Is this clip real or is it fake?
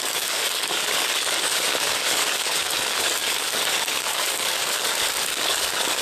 fake